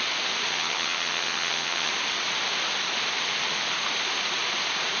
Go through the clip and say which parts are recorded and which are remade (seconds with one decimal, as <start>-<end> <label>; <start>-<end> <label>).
0.0-0.5 recorded; 0.5-1.9 remade; 1.9-5.0 recorded